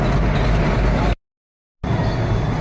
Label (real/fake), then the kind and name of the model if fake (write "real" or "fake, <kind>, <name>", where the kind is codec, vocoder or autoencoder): real